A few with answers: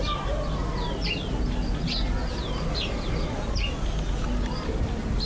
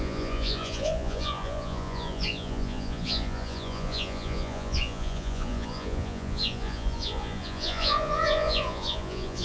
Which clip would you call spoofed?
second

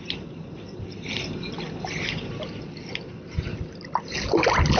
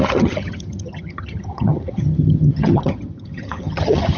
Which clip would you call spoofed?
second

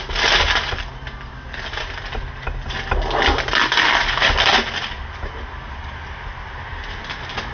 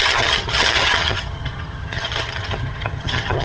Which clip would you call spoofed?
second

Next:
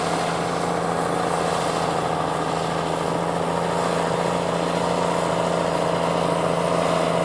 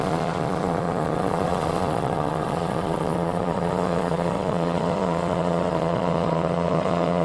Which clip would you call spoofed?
second